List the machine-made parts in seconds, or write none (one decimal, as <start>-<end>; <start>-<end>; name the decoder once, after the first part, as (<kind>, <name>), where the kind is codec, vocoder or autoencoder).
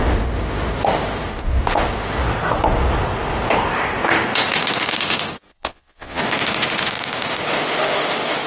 5.5-6.2 (vocoder, Vocos)